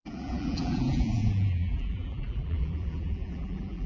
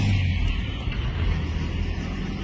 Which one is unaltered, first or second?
second